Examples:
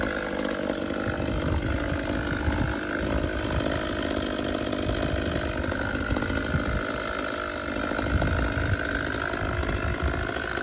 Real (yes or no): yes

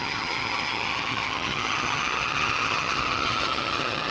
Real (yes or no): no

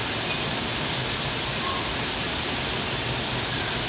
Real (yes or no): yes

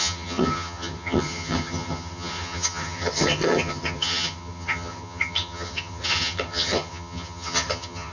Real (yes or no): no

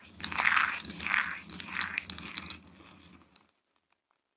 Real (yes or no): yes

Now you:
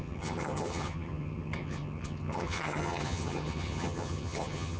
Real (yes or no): no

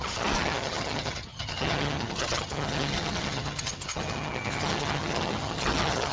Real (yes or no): no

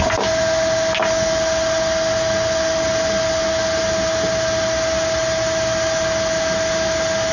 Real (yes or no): yes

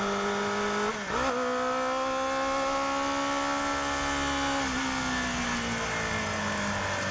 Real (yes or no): yes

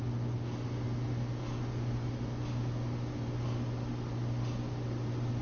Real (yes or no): yes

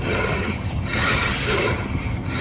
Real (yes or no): no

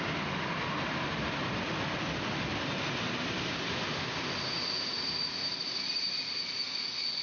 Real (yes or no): yes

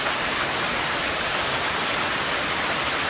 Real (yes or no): yes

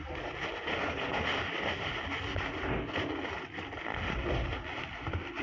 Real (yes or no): yes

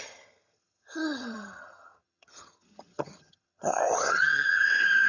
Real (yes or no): no